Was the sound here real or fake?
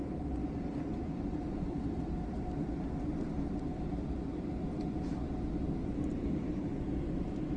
real